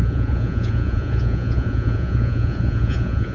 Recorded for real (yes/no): no